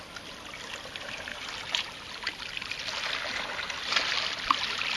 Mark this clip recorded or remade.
recorded